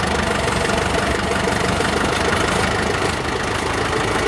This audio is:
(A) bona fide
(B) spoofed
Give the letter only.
A